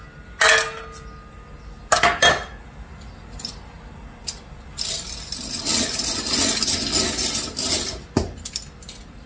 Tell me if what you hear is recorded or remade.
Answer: recorded